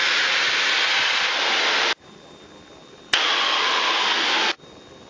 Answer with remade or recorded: recorded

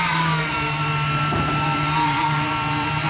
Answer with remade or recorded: recorded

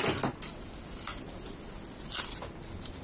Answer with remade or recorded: recorded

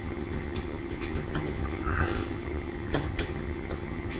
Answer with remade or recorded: remade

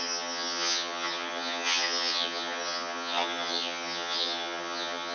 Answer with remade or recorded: remade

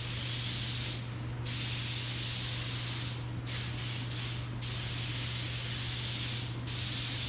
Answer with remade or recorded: recorded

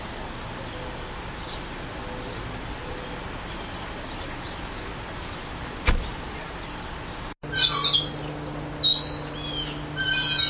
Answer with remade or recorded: recorded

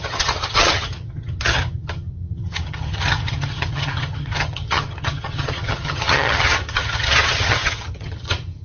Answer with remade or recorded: remade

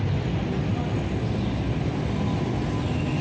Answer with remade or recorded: recorded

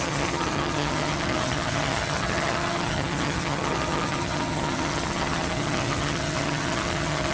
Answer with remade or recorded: remade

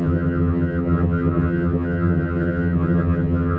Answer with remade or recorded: remade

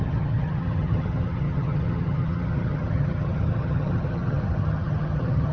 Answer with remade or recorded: remade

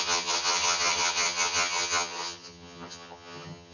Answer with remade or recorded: remade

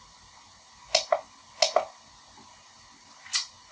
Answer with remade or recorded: recorded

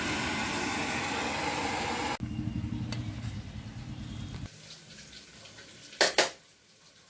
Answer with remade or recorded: recorded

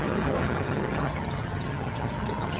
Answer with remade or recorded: remade